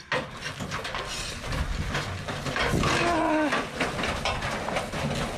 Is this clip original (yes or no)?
yes